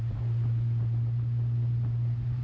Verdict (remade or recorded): recorded